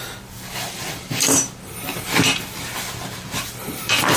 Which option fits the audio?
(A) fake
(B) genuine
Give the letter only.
A